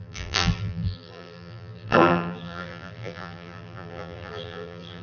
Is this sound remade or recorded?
remade